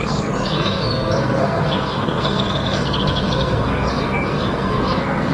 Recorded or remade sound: remade